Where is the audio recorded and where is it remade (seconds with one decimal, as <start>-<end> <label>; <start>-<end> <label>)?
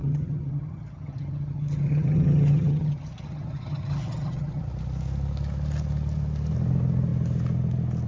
0.0-4.6 remade; 4.6-8.1 recorded